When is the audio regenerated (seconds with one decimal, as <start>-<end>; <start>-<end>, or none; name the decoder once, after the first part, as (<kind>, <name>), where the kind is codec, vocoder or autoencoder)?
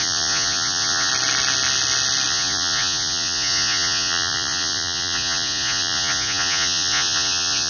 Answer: 0.0-1.1 (vocoder, Vocos); 2.3-7.7